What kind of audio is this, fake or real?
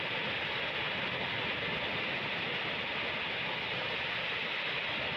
real